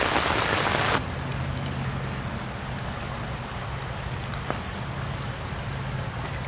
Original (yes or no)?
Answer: yes